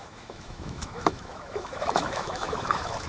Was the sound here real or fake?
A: fake